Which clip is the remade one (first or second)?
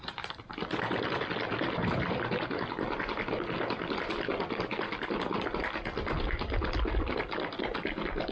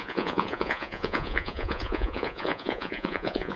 second